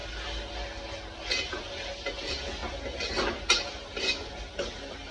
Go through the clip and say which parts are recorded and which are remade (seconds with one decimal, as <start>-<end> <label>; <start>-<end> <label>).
0.0-5.1 recorded